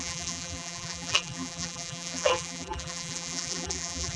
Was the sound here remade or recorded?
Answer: remade